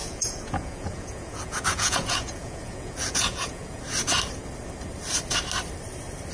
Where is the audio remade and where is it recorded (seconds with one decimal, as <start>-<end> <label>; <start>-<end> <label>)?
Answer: 0.0-3.8 remade; 3.8-6.3 recorded